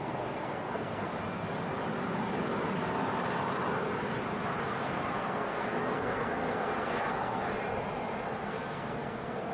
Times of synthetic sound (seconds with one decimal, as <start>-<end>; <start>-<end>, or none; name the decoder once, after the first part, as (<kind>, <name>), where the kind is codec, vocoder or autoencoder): 0.0-1.1 (codec, SNAC); 4.6-7.5; 8.4-9.5